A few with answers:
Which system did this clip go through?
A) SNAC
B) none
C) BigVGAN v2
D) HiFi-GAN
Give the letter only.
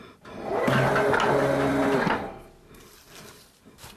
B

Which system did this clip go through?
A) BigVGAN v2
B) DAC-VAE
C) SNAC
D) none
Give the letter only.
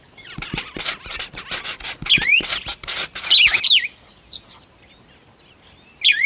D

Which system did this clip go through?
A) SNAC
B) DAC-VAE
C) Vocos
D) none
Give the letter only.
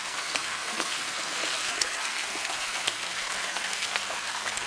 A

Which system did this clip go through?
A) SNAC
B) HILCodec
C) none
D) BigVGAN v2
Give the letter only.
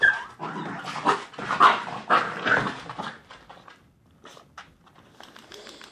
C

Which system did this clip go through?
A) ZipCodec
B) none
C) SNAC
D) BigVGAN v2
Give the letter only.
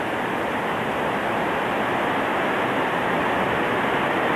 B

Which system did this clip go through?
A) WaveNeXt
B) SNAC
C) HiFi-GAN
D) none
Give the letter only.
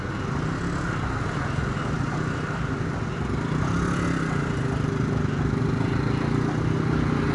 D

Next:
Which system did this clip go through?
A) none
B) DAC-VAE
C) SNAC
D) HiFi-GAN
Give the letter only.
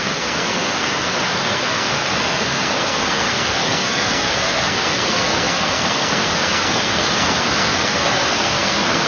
C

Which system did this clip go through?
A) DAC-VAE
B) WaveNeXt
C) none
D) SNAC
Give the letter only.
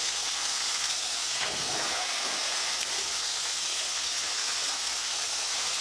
D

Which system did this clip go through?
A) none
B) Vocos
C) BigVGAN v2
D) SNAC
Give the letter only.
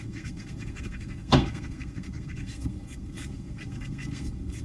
D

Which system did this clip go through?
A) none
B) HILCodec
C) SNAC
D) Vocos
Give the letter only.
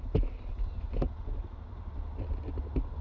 A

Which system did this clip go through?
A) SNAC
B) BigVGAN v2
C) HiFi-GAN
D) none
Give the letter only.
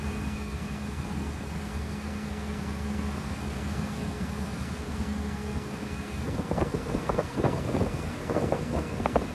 A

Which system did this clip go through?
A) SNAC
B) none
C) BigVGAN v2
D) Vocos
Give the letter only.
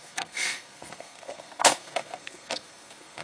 A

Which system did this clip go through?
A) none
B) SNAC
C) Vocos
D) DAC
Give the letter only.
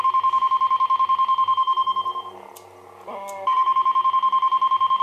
A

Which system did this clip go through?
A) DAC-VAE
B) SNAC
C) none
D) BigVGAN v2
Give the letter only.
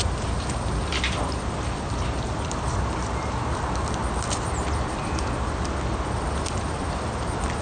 C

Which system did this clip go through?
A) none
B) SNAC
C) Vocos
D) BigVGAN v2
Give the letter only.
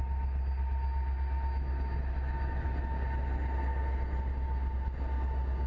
A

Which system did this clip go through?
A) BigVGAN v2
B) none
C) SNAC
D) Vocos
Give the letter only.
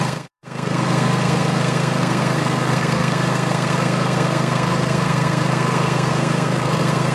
C